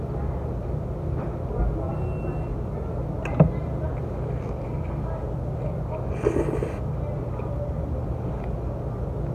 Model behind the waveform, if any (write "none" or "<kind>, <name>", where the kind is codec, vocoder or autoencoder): none